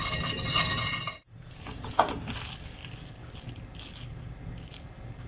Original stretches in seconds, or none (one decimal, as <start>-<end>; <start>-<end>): 0.0-0.7; 2.0-5.3